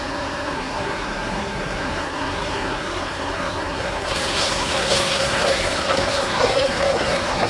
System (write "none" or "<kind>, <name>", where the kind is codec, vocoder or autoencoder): codec, SNAC